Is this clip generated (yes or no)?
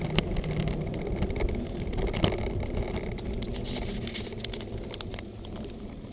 no